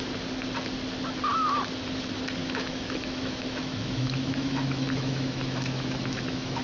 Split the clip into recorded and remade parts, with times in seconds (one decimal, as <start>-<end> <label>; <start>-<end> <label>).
0.0-2.4 recorded; 2.4-6.6 remade